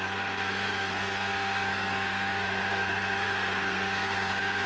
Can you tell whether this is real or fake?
fake